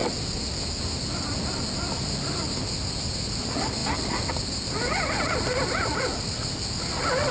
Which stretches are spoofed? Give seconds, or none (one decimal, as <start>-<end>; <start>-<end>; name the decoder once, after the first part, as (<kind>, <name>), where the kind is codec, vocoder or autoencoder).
none